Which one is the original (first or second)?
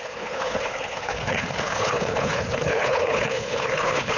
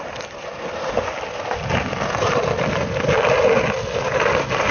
second